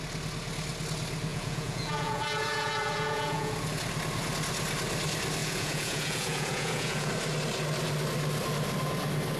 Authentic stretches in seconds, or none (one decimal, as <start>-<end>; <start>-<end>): 0.0-1.3; 3.5-5.4; 7.1-9.4